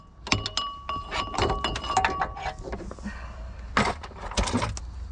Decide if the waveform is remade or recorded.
recorded